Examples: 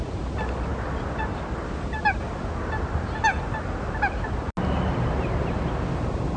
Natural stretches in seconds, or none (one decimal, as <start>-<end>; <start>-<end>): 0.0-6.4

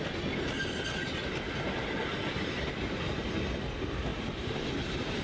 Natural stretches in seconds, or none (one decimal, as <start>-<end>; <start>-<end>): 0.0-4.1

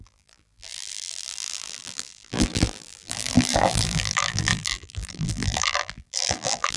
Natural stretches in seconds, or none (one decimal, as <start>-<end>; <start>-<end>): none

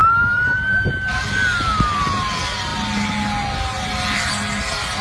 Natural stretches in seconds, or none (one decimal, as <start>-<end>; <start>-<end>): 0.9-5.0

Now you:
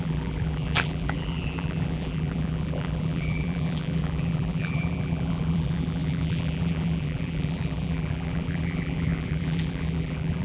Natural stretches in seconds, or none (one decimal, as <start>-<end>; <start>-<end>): none

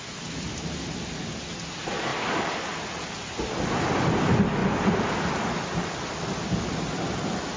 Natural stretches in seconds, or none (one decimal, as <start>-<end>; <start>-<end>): 0.0-7.6